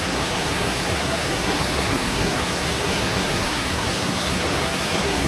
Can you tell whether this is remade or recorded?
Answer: remade